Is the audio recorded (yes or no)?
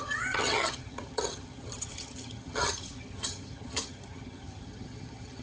no